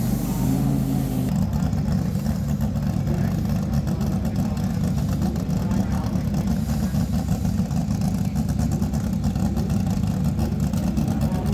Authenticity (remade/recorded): recorded